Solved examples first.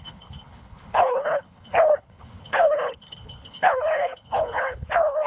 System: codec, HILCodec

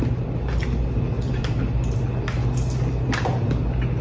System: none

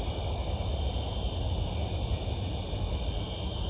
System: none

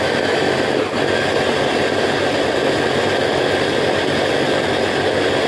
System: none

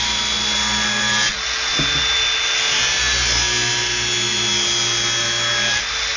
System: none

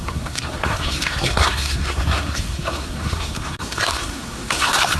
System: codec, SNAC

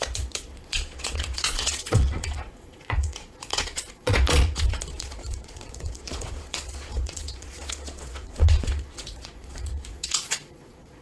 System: vocoder, Vocos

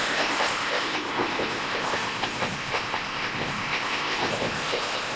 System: codec, ZipCodec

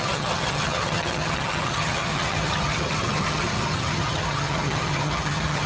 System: vocoder, HiFi-GAN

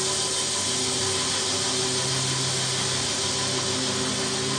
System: none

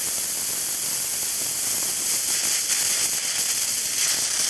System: none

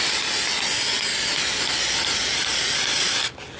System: none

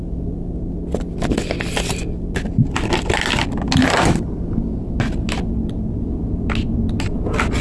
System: none